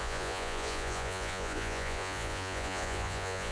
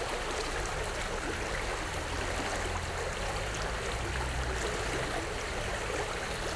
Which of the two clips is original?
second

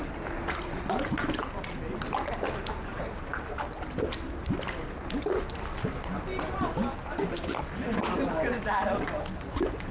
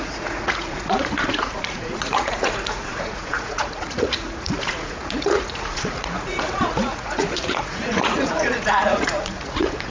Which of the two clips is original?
first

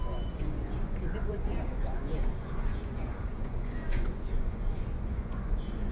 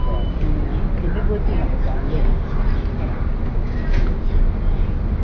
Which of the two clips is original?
second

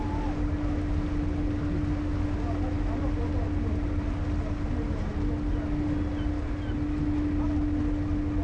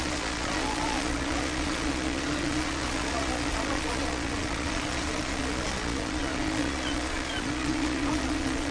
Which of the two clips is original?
first